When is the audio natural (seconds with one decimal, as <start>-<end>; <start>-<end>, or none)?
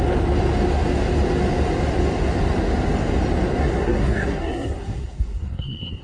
0.0-3.6